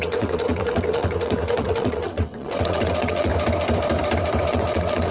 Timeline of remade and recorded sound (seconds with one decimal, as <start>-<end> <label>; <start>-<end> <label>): 0.0-3.3 remade; 3.3-4.5 recorded; 4.5-5.1 remade